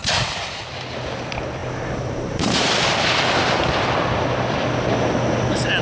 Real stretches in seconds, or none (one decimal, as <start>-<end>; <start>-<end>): 0.6-1.6; 2.7-5.8